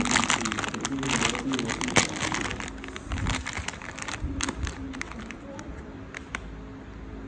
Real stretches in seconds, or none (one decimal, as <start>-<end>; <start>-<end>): 0.0-2.5; 6.3-7.3